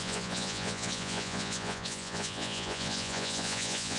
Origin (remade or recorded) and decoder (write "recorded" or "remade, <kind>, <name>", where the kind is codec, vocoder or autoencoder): remade, vocoder, Vocos